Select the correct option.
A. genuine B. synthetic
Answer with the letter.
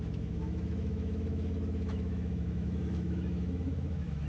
B